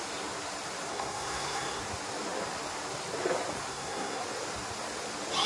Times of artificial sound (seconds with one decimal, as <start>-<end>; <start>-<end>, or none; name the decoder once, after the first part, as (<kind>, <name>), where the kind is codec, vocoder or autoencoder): 0.9-1.8 (codec, SNAC); 3.7-4.2